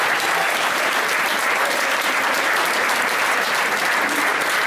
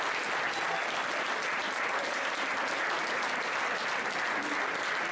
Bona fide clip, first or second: second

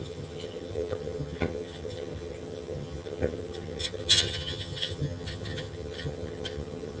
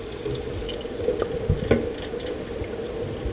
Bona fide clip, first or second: second